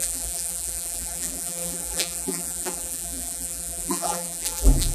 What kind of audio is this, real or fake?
fake